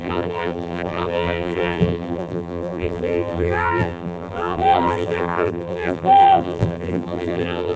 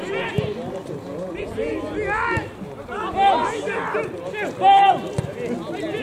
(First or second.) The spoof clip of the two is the first